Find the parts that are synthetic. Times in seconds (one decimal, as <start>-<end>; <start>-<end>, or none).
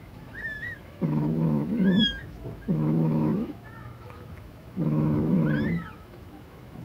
0.0-6.8